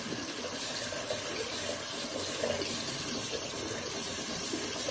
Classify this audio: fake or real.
real